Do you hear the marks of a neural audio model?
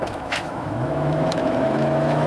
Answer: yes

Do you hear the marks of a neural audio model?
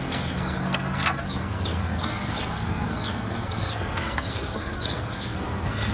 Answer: yes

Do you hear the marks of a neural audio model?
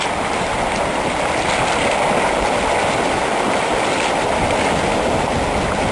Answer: no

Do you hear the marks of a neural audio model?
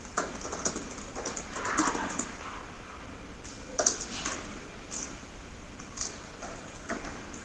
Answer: no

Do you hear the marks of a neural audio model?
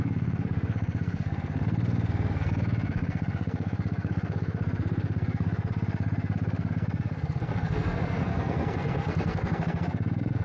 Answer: yes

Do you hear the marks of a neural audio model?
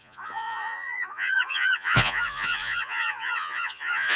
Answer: yes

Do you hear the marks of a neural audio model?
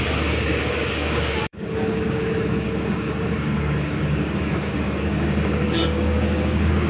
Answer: yes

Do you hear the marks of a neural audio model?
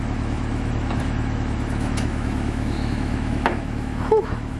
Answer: yes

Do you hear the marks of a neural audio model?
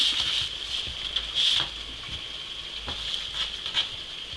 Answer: no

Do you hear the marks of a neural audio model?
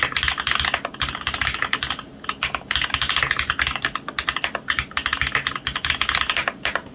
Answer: no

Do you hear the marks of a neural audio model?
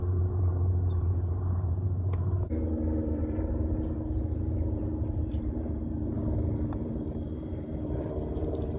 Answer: yes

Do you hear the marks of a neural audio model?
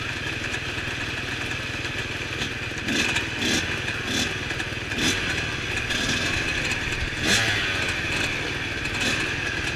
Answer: no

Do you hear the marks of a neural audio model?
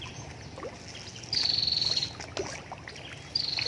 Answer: no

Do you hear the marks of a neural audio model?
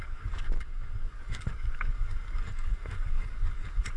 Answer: yes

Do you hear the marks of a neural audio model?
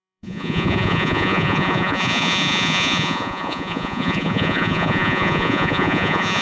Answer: yes